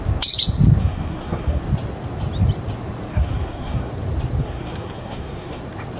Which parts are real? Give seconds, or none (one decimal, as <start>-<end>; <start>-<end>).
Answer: 0.0-0.8; 1.6-3.1; 3.9-4.4; 5.6-6.0